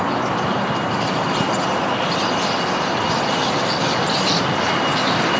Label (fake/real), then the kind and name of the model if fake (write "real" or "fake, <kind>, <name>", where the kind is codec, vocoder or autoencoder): real